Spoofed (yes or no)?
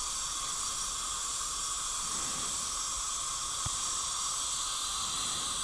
no